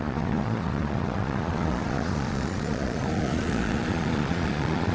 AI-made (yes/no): yes